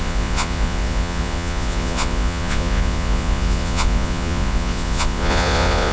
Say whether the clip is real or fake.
fake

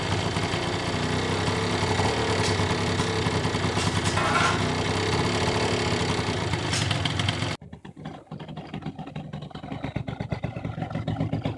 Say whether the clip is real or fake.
real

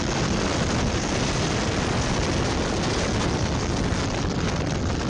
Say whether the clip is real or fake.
real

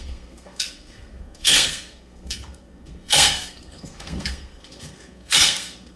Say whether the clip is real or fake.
fake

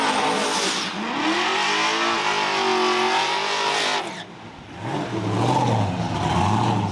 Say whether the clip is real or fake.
real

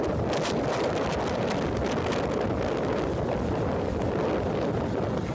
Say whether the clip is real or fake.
real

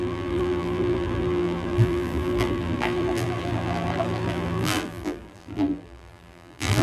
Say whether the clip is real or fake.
fake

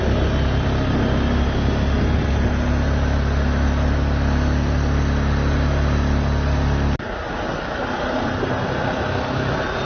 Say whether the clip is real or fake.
real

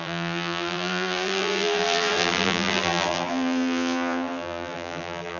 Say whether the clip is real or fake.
fake